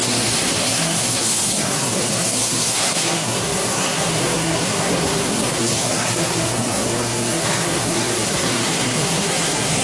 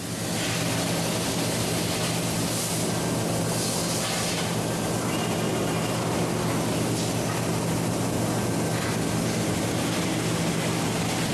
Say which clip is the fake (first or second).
first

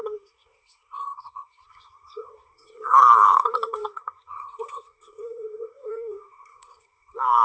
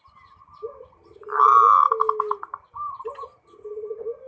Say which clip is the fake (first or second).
first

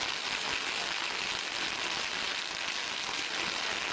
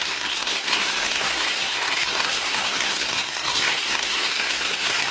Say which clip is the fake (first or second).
second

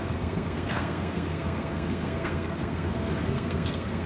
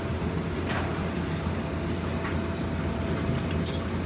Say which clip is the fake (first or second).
first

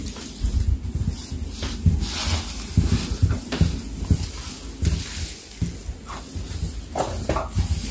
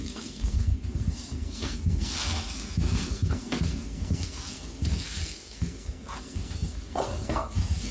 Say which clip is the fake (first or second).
second